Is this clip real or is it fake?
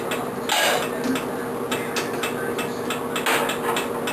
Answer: real